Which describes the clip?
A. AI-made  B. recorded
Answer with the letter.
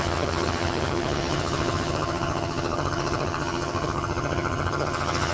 A